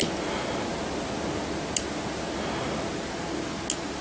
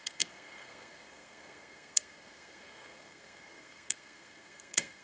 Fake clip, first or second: second